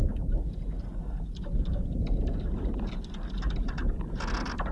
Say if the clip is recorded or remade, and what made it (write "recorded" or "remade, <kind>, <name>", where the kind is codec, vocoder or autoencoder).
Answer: recorded